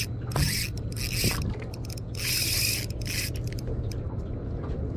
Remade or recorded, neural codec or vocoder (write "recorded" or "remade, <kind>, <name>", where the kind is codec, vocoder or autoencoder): recorded